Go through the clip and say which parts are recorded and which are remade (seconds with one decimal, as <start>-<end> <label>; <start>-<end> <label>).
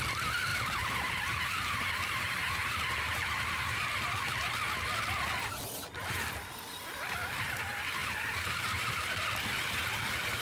0.0-0.5 recorded; 0.5-4.5 remade; 4.5-8.0 recorded; 8.0-9.3 remade; 9.3-10.4 recorded